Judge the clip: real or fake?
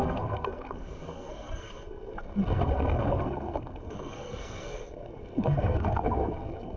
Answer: fake